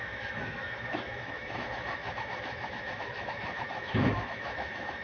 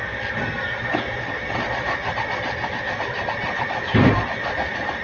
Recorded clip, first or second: second